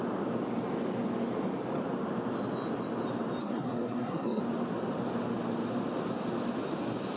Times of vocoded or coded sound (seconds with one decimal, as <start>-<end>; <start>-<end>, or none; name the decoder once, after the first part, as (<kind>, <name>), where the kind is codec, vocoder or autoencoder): 3.4-4.4 (codec, SNAC)